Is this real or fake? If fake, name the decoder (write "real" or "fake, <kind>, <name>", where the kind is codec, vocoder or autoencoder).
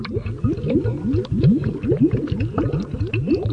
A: real